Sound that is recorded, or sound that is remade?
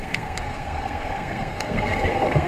remade